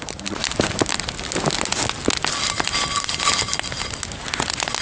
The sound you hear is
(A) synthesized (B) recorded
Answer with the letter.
B